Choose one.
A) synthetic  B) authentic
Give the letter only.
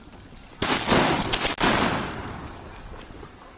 B